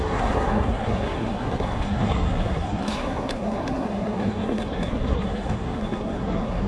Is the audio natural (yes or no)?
no